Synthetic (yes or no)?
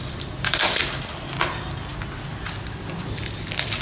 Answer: no